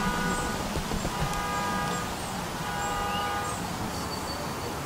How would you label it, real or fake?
real